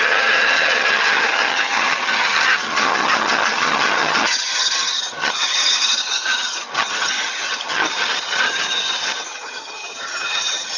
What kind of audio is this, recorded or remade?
remade